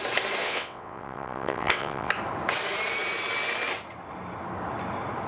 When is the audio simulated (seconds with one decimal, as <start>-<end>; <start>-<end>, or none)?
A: 0.4-2.1